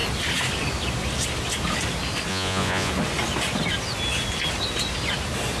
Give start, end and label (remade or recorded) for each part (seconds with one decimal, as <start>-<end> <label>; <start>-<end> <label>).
0.0-2.3 recorded; 2.3-2.9 remade; 2.9-5.6 recorded